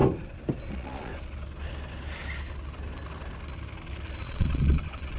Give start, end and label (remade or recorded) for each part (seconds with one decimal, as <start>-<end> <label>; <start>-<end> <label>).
0.0-0.7 recorded; 0.7-1.1 remade; 1.1-4.2 recorded; 4.2-5.2 remade